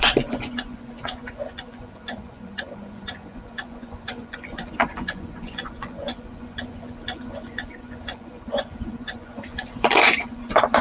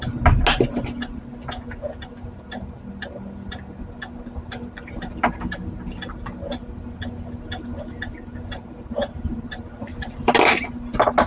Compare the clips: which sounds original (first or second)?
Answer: second